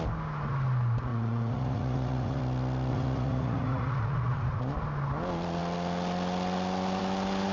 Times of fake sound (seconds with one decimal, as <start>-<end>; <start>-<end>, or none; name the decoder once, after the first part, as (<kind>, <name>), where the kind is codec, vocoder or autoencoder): 1.1-2.4 (vocoder, Vocos); 2.9-4.6